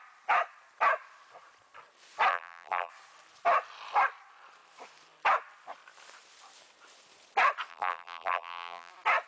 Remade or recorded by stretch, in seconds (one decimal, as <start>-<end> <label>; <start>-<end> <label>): 0.0-2.3 recorded; 2.3-2.9 remade; 2.9-7.7 recorded; 7.7-8.9 remade; 8.9-9.3 recorded